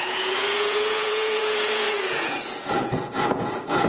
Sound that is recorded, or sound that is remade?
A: remade